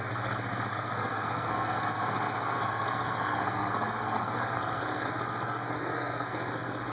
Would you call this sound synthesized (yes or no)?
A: yes